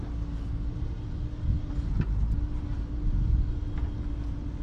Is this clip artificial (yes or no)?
no